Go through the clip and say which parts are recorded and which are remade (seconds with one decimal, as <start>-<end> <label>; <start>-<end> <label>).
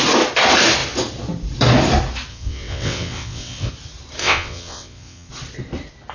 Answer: 0.0-2.3 recorded; 2.3-3.7 remade; 3.7-4.2 recorded; 4.2-5.3 remade; 5.3-6.1 recorded